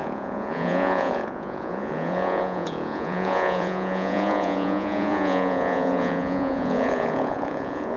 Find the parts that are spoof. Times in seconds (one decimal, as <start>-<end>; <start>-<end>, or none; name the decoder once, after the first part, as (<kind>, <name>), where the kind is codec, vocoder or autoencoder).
0.0-8.0 (vocoder, Vocos)